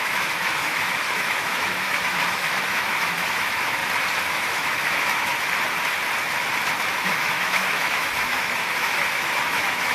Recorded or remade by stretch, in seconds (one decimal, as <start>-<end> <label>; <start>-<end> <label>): 0.0-3.8 remade; 3.8-4.3 recorded; 4.3-5.3 remade; 5.3-6.9 recorded; 6.9-9.9 remade